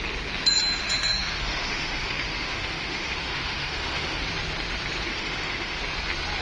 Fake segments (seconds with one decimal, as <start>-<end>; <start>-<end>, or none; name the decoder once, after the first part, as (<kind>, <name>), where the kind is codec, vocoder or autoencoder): 0.8-4.2 (autoencoder, DAC-VAE); 5.1-5.8